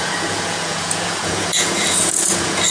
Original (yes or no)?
no